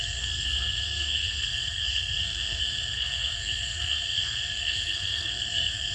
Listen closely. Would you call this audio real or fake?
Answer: fake